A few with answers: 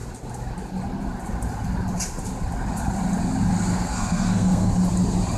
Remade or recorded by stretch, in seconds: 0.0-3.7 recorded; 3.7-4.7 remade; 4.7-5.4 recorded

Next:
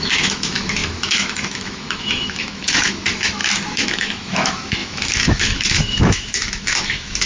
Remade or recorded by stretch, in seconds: 0.0-7.3 remade

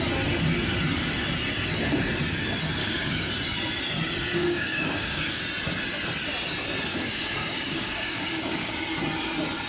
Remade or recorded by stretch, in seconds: 0.0-2.8 recorded; 2.8-3.3 remade; 3.3-4.3 recorded; 4.3-5.4 remade; 5.4-6.9 recorded; 6.9-8.7 remade; 8.7-9.7 recorded

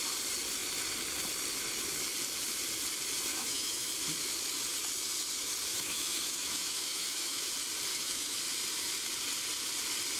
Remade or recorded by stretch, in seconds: 0.0-3.3 recorded; 3.3-3.9 remade; 3.9-5.7 recorded; 5.7-7.5 remade; 7.5-7.9 recorded; 7.9-8.4 remade; 8.4-10.2 recorded

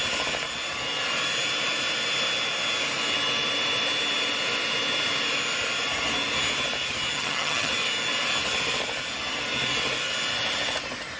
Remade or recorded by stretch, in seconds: 0.0-7.1 recorded; 7.1-7.7 remade; 7.7-11.2 recorded

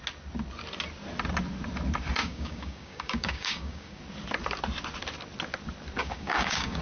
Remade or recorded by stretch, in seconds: 0.0-2.2 recorded; 2.2-4.0 remade; 4.0-6.0 recorded; 6.0-6.8 remade

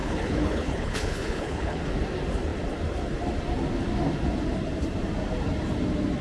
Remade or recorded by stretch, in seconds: 0.0-1.8 remade; 1.8-6.2 recorded

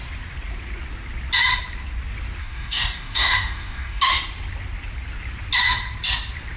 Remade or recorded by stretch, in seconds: 0.0-2.4 recorded; 2.4-4.0 remade; 4.0-6.6 recorded